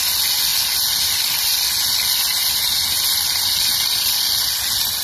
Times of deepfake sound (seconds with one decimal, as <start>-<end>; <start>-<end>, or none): none